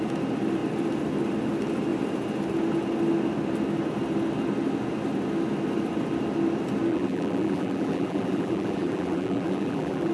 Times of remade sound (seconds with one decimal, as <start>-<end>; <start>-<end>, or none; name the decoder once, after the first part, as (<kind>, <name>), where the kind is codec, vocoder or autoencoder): 6.9-10.1 (vocoder, BigVGAN v2)